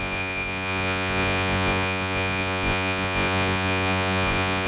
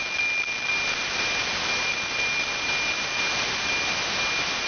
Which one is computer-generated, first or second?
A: first